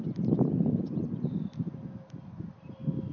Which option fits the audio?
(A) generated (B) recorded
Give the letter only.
B